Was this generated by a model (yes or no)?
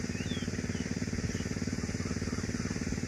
no